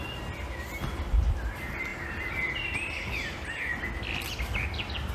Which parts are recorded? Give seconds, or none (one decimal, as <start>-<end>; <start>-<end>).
0.0-5.1